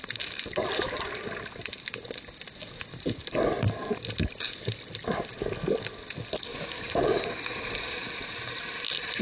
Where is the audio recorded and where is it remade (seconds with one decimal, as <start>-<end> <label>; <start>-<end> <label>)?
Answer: 0.0-2.9 recorded; 2.9-3.7 remade; 3.7-6.5 recorded; 6.5-9.2 remade